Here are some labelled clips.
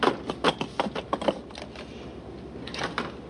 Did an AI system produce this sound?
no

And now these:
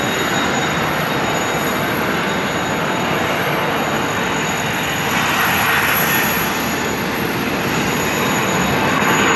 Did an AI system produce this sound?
no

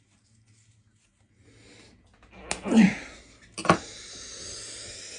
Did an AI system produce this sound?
no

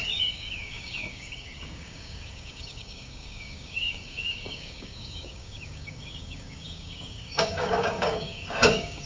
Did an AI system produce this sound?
yes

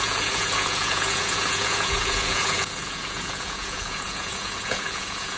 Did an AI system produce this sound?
yes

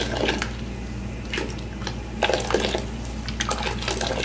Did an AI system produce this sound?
no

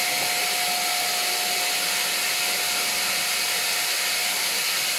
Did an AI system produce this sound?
no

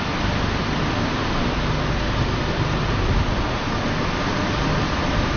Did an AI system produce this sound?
no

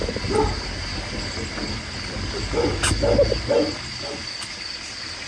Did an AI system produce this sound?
no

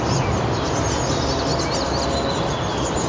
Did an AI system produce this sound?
no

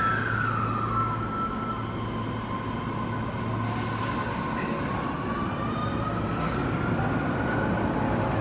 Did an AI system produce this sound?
no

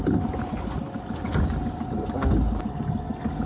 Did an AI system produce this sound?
no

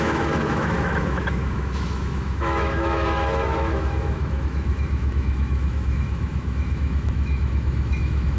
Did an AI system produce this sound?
yes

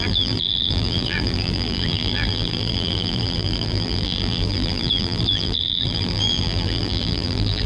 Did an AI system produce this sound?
yes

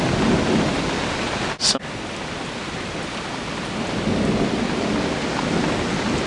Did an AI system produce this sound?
no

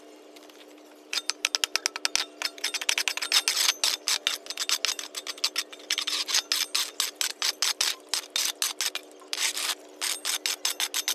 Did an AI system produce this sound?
no